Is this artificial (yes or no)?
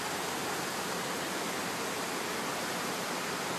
no